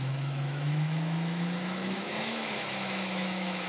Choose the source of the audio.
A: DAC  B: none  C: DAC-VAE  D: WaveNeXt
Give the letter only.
C